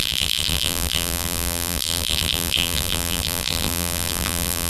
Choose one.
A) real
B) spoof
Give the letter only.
B